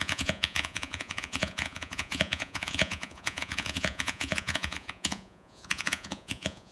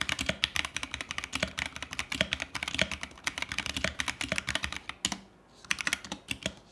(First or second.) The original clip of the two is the second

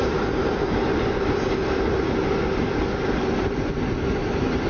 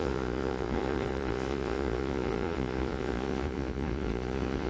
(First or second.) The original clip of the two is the first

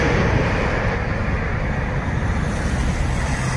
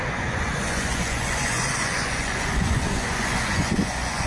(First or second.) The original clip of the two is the first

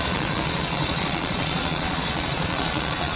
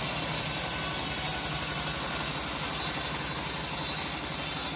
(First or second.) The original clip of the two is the second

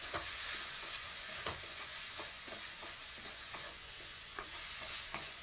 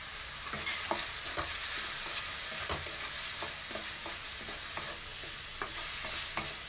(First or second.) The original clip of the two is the second